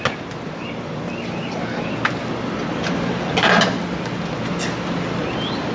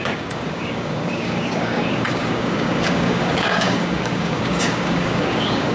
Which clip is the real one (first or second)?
first